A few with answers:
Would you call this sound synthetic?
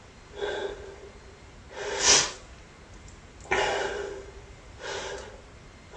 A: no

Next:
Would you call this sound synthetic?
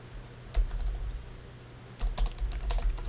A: no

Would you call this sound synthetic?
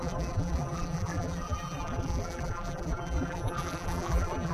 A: yes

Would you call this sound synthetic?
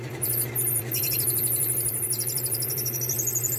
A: yes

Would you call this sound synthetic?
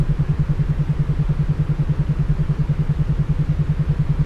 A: no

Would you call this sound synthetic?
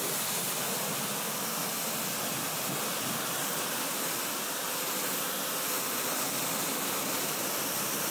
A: no